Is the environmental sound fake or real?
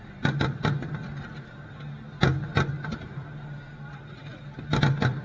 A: real